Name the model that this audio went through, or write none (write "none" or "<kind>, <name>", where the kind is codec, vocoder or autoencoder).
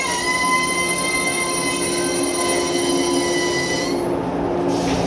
none